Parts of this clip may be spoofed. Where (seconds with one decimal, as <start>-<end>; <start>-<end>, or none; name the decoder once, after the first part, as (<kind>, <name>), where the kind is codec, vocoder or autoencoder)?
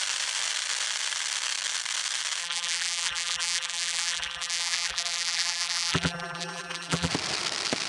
2.4-7.1 (vocoder, BigVGAN v2)